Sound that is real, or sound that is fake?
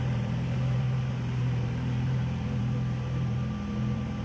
fake